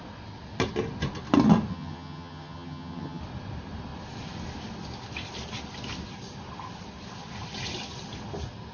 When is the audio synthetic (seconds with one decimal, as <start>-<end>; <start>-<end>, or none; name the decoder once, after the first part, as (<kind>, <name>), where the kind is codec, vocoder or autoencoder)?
1.7-3.2 (vocoder, HiFi-GAN)